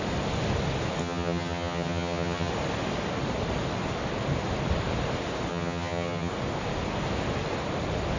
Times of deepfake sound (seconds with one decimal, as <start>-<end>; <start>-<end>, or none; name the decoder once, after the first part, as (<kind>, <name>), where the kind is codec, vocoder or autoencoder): 1.0-2.5 (vocoder, HiFi-GAN); 5.5-6.3